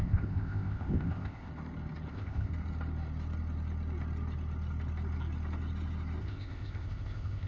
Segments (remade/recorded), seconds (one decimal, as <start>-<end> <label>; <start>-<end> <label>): 0.0-1.5 remade; 1.5-2.1 recorded; 2.1-2.5 remade; 2.5-6.2 recorded; 6.2-7.5 remade